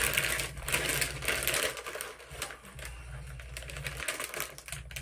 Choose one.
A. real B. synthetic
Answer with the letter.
A